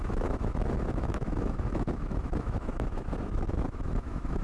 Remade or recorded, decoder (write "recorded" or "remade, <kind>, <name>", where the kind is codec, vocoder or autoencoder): remade, autoencoder, DAC-VAE